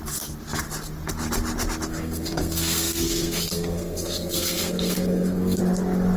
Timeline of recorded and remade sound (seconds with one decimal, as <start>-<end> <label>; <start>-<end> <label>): 0.0-1.9 recorded; 1.9-5.6 remade; 5.6-6.2 recorded